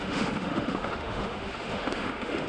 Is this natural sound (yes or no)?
no